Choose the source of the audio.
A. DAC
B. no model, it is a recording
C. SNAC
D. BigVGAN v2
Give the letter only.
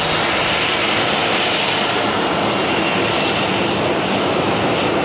B